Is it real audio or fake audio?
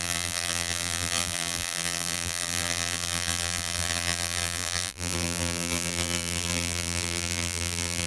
fake